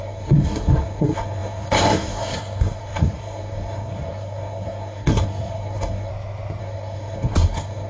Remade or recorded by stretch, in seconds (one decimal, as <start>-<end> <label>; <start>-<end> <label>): 0.0-6.1 remade; 6.1-6.6 recorded; 6.6-7.9 remade